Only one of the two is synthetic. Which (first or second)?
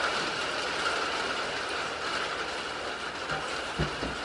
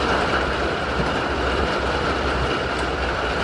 second